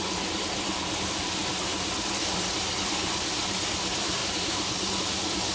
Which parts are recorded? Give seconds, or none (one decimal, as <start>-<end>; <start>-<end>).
4.2-5.0